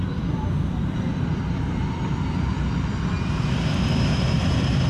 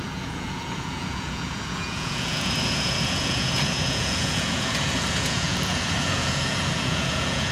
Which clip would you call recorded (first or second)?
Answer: first